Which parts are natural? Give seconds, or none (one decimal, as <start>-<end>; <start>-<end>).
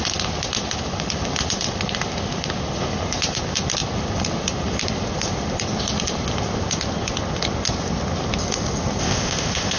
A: 0.0-9.0